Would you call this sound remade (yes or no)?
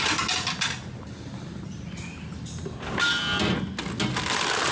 no